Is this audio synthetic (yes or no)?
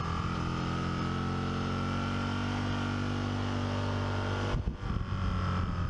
no